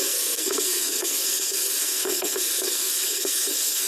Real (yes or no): no